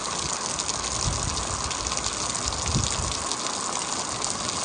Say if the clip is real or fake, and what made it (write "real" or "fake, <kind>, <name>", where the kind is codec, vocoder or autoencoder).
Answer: real